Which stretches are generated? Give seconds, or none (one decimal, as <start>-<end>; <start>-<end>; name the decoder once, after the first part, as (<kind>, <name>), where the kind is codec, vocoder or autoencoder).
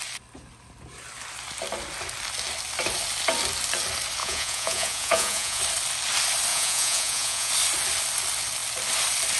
4.2-5.6 (vocoder, Vocos); 6.5-7.5